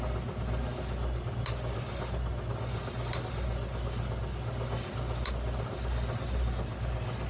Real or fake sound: real